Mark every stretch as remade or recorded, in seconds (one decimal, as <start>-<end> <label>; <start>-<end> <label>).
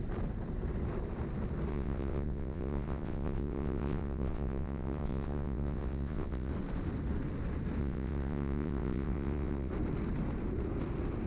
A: 0.0-1.7 recorded; 1.7-6.5 remade; 6.5-7.8 recorded; 7.8-9.7 remade; 9.7-11.3 recorded